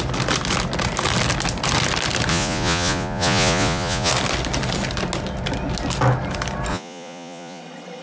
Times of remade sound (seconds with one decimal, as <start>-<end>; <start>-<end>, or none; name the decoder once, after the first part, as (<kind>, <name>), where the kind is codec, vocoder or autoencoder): 2.3-4.1 (vocoder, Vocos); 6.7-7.6